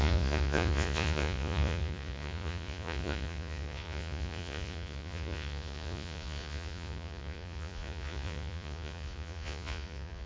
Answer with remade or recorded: remade